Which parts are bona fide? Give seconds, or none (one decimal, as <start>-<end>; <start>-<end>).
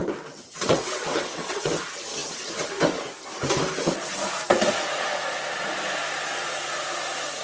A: 1.8-7.4